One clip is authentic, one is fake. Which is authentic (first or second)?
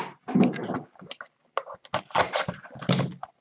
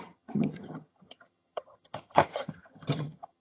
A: first